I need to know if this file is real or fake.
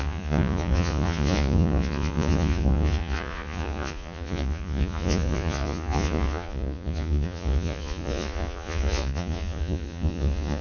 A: fake